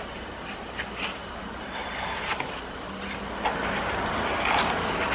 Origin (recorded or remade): recorded